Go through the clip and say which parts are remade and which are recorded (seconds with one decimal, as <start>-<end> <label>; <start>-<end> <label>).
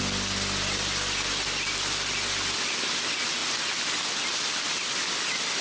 0.0-5.6 recorded